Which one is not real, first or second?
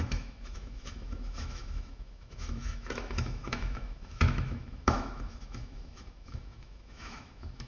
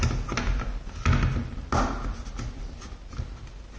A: first